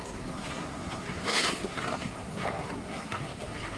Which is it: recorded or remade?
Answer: remade